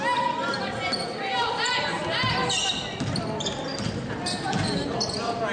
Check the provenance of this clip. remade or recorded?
recorded